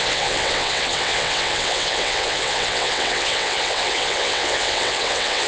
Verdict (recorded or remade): remade